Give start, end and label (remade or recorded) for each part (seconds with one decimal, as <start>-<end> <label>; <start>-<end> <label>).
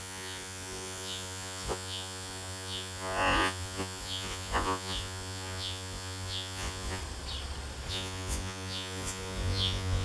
0.0-7.0 remade; 7.0-7.9 recorded; 7.9-10.0 remade